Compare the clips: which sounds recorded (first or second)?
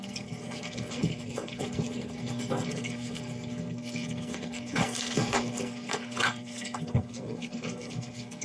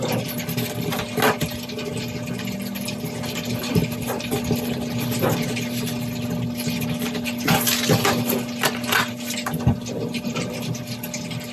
second